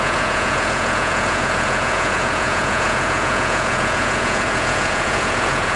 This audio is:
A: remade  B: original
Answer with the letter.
A